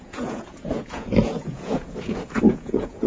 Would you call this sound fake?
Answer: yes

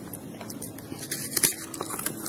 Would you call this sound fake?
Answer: no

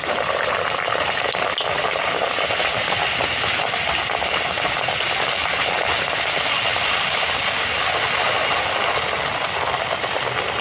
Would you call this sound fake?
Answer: no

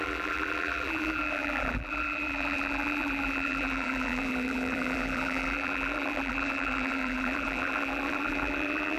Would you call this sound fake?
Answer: yes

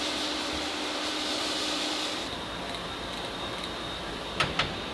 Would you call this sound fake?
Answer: no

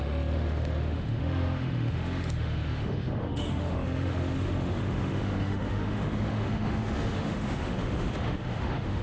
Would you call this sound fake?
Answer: yes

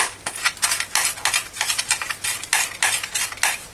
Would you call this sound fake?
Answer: no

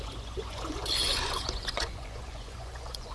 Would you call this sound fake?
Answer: yes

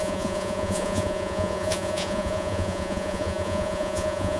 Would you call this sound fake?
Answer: yes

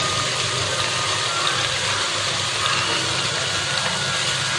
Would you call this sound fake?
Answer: no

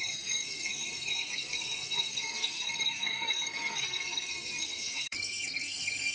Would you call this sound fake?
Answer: yes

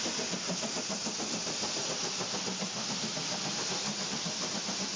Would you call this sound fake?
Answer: no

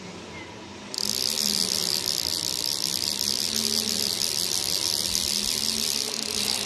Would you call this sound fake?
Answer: no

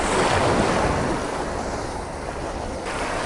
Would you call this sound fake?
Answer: no